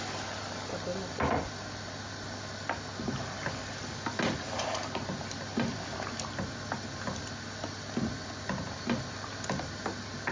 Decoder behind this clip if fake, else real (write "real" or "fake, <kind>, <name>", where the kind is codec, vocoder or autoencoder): real